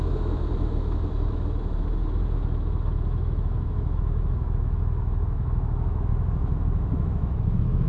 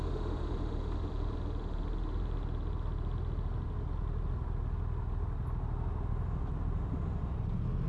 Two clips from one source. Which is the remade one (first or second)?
first